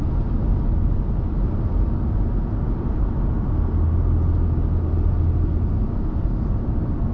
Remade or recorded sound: recorded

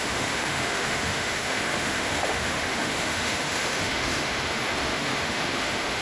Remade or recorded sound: remade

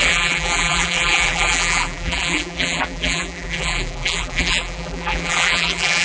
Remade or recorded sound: remade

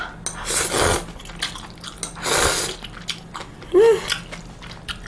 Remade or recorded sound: recorded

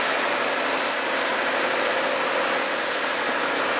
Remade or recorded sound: recorded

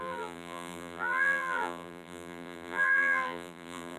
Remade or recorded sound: remade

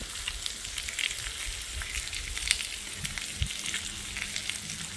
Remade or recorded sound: recorded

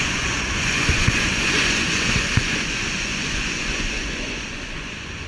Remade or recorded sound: remade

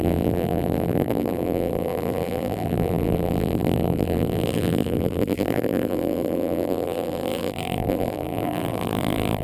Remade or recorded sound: remade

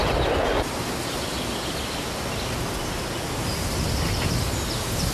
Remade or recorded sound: recorded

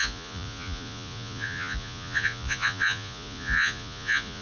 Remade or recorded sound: remade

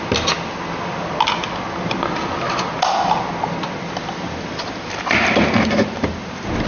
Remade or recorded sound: recorded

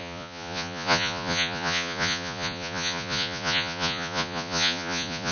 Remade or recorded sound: remade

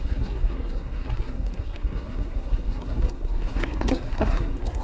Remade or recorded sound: remade